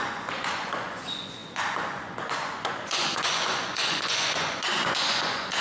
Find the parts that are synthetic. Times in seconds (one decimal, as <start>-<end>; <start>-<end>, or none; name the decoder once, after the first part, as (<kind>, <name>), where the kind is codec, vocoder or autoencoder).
0.0-5.6 (vocoder, Vocos)